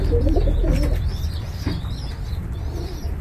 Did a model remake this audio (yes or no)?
yes